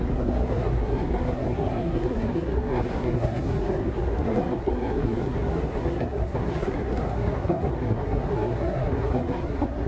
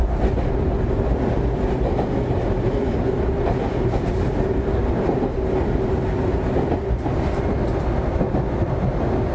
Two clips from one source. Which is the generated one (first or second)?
first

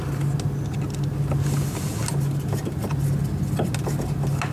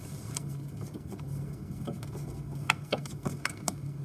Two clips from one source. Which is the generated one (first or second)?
second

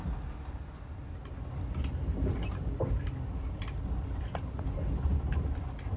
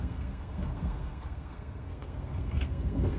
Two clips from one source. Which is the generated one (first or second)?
second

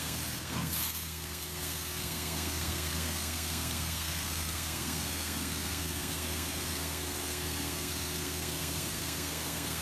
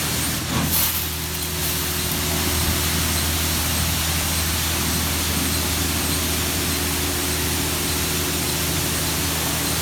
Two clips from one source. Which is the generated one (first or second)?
first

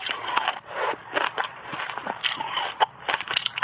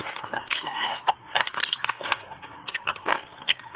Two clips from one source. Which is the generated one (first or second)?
second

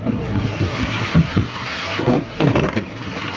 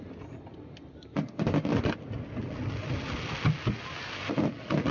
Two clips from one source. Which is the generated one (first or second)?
first